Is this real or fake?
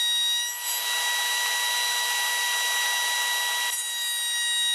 real